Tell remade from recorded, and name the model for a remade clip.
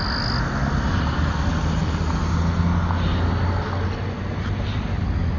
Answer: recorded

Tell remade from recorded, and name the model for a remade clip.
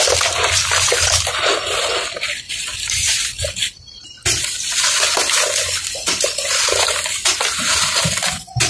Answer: recorded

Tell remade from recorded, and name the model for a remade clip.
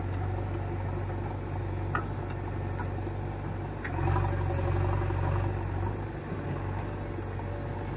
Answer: recorded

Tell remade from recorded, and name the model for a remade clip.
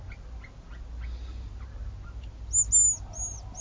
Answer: recorded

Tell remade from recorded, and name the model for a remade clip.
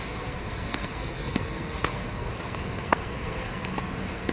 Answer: remade, codec, SNAC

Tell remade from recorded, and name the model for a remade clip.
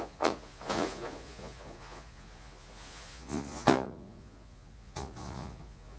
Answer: remade, vocoder, Vocos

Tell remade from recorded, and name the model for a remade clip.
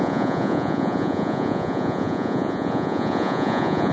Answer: remade, vocoder, Vocos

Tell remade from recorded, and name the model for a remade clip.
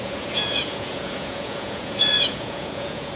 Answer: remade, vocoder, Vocos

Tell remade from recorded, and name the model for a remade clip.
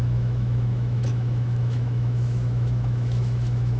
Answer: remade, autoencoder, DAC-VAE